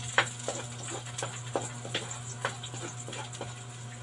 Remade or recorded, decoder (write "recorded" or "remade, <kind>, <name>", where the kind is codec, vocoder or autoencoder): recorded